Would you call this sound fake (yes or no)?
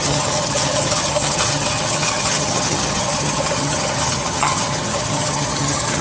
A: yes